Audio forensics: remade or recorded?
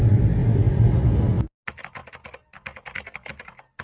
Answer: recorded